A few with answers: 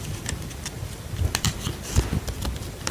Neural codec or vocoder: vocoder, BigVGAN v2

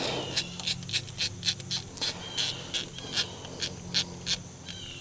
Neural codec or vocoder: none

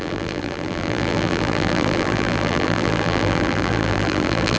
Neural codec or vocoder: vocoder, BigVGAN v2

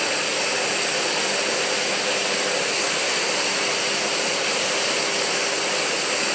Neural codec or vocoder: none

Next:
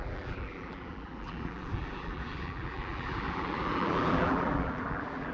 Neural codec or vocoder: vocoder, BigVGAN v2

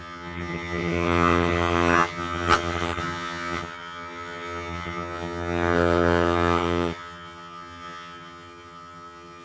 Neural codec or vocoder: vocoder, HiFi-GAN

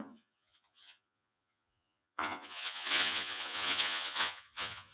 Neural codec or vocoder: vocoder, Vocos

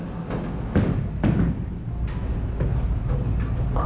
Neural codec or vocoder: none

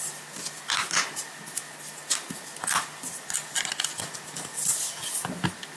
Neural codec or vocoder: none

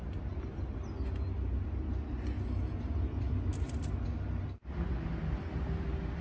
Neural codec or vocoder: none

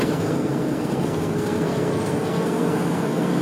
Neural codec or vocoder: codec, SNAC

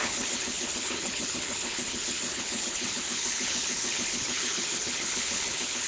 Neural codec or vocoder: codec, HILCodec